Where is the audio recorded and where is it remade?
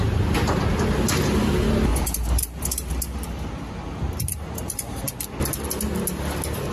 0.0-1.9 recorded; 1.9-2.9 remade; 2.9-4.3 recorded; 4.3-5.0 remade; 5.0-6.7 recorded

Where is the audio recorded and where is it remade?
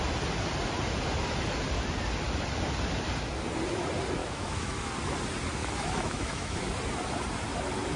0.0-4.2 recorded; 4.2-4.9 remade; 4.9-5.6 recorded; 5.6-6.6 remade; 6.6-8.0 recorded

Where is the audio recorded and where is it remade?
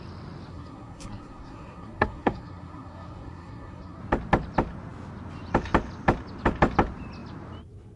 0.0-0.5 recorded; 0.5-4.0 remade; 4.0-8.0 recorded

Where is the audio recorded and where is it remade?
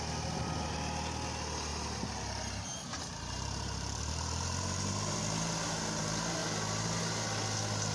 0.0-1.7 recorded; 1.7-5.2 remade; 5.2-7.9 recorded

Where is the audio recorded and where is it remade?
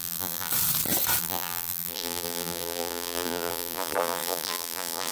0.0-0.5 remade; 0.5-1.2 recorded; 1.2-5.1 remade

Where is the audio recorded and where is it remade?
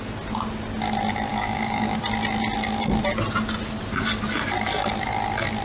0.0-1.3 recorded; 1.3-2.0 remade; 2.0-5.6 recorded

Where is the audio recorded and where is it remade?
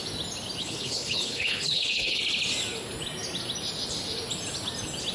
0.0-0.6 recorded; 0.6-2.2 remade; 2.2-5.1 recorded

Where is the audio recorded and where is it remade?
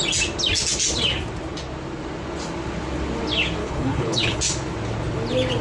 0.0-3.6 recorded; 3.6-4.4 remade; 4.4-5.6 recorded